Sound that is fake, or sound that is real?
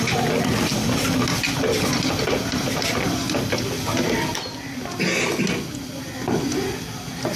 real